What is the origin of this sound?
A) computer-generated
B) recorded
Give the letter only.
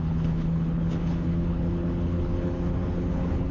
A